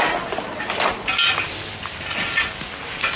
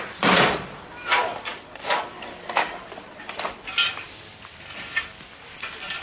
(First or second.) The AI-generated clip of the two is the second